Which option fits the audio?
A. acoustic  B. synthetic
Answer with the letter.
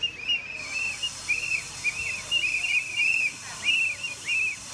A